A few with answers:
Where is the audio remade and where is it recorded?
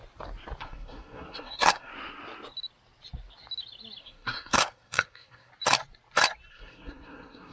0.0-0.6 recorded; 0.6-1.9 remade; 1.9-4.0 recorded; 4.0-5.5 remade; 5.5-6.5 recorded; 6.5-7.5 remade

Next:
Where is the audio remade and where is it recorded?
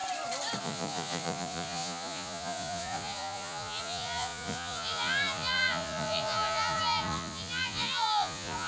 0.0-0.6 recorded; 0.6-8.7 remade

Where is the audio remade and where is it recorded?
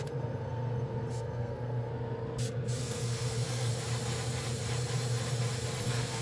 0.0-1.9 remade; 1.9-2.8 recorded; 2.8-3.7 remade; 3.7-5.8 recorded; 5.8-6.2 remade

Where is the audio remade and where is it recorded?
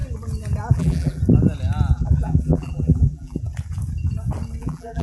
0.0-0.7 recorded; 0.7-1.2 remade; 1.2-1.9 recorded; 1.9-3.5 remade; 3.5-4.6 recorded; 4.6-5.0 remade